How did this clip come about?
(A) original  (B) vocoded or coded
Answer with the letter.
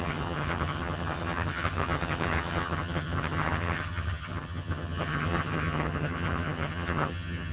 B